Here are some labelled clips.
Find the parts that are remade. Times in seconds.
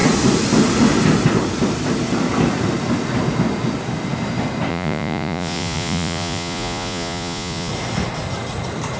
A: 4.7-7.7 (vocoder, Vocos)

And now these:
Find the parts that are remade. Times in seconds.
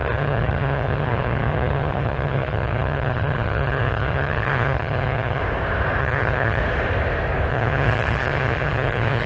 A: 0.0-5.4 (vocoder, HiFi-GAN); 6.0-6.6; 7.5-9.3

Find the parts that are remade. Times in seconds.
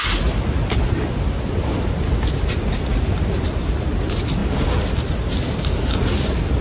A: none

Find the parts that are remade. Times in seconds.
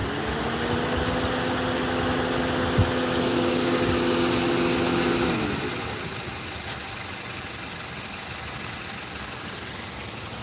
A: none